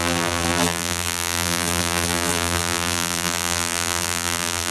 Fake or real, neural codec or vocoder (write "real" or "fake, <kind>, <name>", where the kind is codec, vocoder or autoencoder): fake, vocoder, BigVGAN v2